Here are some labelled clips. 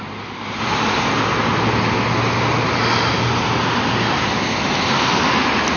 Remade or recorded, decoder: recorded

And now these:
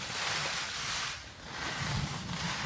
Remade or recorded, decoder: recorded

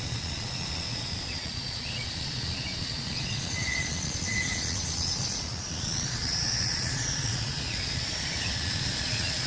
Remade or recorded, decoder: remade, vocoder, Vocos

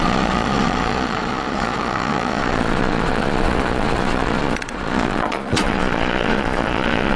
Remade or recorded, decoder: remade, vocoder, Vocos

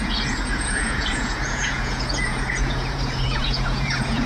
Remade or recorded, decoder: remade, vocoder, Vocos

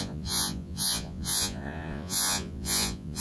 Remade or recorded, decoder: remade, vocoder, Vocos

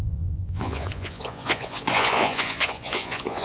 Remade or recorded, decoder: remade, vocoder, Vocos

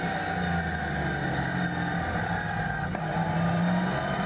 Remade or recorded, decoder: recorded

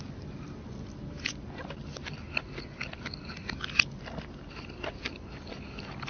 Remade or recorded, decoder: recorded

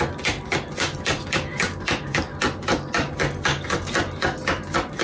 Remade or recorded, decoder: recorded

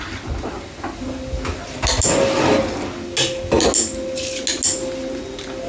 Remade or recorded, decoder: recorded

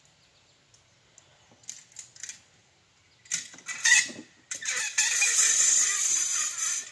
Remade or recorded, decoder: recorded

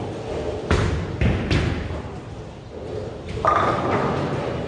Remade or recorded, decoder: recorded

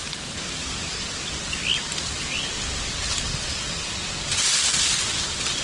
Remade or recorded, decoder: recorded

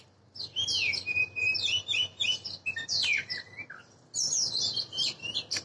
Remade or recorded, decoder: recorded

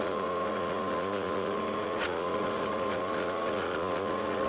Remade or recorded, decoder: remade, vocoder, Vocos